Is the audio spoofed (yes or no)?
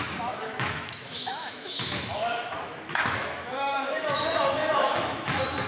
yes